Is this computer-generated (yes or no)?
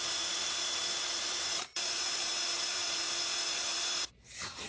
yes